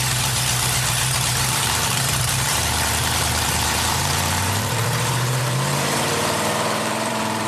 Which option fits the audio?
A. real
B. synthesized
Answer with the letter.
B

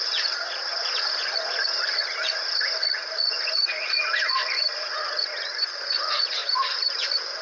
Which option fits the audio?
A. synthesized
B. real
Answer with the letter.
A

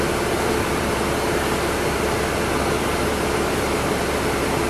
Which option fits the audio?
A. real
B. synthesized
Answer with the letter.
A